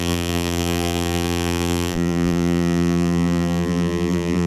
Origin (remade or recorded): remade